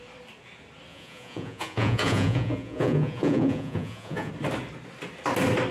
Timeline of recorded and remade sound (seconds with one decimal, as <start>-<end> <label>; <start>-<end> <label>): 0.0-0.9 recorded; 0.9-4.3 remade; 4.3-5.7 recorded